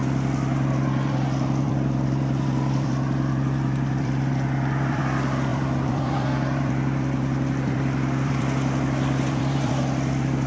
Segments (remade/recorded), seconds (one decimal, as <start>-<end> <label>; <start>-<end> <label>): 0.0-5.0 remade; 5.0-5.5 recorded; 5.5-9.7 remade; 9.7-10.5 recorded